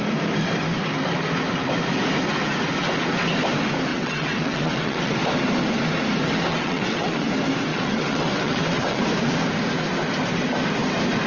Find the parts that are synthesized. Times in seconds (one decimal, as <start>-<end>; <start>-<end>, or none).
3.9-5.1; 6.5-7.3; 7.7-9.0